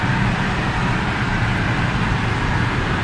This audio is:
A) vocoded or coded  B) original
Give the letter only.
B